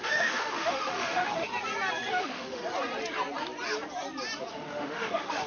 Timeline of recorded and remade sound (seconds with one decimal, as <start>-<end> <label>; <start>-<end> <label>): 0.0-1.5 remade; 1.5-2.1 recorded; 2.1-2.6 remade; 2.6-4.5 recorded; 4.5-5.5 remade